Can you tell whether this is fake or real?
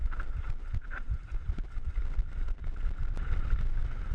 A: real